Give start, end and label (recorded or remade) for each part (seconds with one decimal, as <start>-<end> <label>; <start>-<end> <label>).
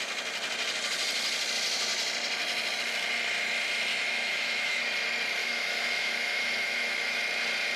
0.0-3.9 recorded; 3.9-4.8 remade; 4.8-5.4 recorded; 5.4-7.2 remade; 7.2-7.8 recorded